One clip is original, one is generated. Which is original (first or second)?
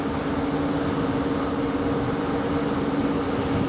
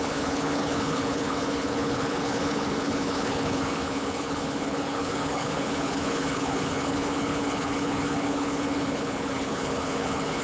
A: first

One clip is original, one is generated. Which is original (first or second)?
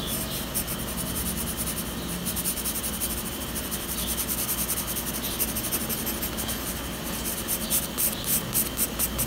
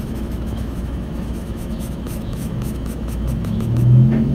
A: first